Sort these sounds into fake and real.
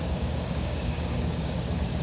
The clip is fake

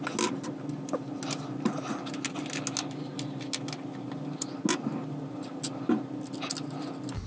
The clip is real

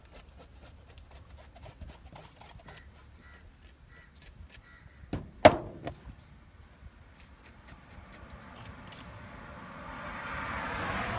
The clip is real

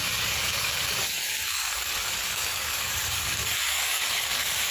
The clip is fake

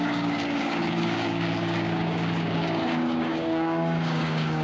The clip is fake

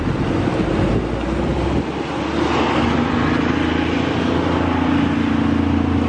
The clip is real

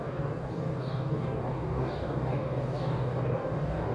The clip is fake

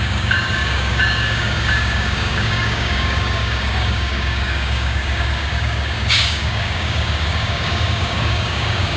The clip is fake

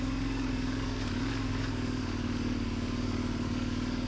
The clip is fake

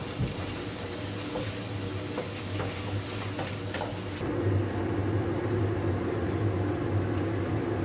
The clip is real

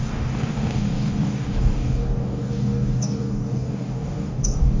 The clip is fake